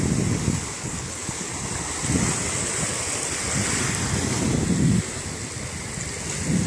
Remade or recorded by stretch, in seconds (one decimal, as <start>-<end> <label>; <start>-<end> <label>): 0.0-0.7 recorded; 0.7-1.5 remade; 1.5-6.7 recorded